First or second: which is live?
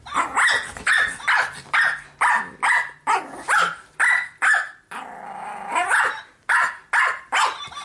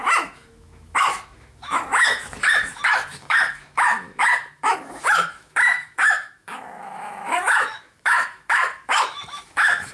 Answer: first